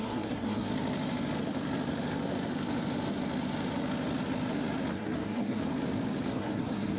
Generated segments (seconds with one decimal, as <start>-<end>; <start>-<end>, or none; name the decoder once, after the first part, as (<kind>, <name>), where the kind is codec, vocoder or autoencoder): 0.0-0.7 (codec, SNAC); 4.9-5.6; 6.3-7.0